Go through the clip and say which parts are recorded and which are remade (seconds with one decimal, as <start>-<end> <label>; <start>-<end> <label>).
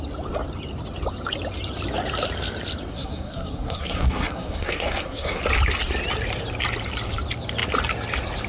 0.0-2.9 recorded; 2.9-5.4 remade; 5.4-8.5 recorded